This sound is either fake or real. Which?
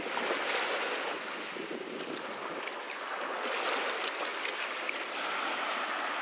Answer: real